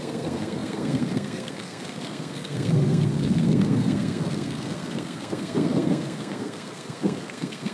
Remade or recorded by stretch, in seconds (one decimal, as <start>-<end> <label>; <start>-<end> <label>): 0.0-7.7 remade